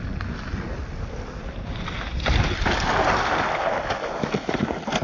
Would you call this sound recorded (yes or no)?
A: yes